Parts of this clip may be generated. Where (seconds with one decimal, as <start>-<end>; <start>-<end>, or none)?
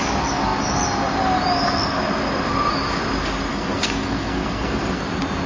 3.5-5.0